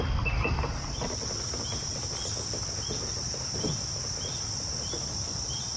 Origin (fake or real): real